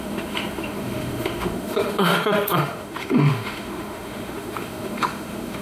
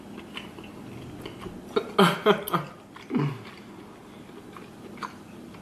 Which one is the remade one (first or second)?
first